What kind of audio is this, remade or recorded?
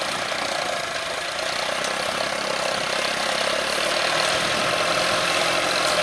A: recorded